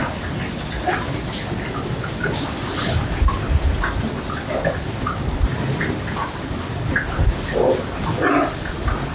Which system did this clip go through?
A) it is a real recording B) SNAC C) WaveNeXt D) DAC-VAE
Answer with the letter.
A